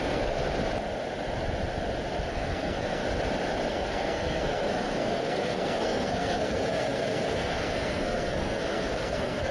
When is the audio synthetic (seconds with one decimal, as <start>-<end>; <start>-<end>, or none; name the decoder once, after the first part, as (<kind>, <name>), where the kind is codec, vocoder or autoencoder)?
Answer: 0.0-0.4 (codec, SNAC); 2.3-3.0; 3.7-9.5